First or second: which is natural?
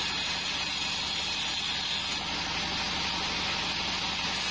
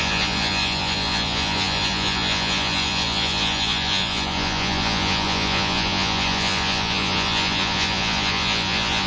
first